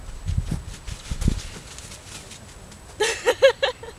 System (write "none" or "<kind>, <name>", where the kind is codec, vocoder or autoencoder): none